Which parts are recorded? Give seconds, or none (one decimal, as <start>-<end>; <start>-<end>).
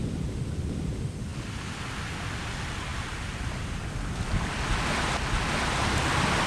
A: 0.9-6.5